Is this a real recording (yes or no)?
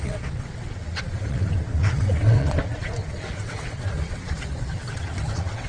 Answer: no